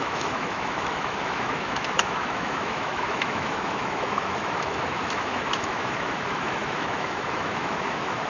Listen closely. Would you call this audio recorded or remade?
remade